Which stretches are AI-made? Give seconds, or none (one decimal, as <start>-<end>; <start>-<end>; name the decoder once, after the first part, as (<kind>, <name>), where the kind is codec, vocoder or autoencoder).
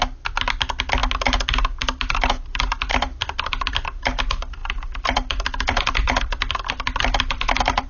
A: 2.9-3.7 (vocoder, BigVGAN v2); 4.6-7.9